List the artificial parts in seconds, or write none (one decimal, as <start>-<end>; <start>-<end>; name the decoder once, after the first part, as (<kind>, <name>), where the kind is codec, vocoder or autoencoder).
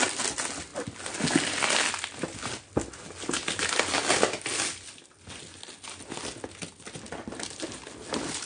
none